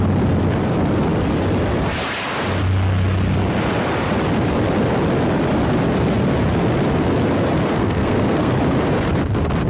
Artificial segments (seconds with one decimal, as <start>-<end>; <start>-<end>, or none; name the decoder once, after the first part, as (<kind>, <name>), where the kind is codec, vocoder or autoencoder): 7.8-8.6 (codec, SNAC)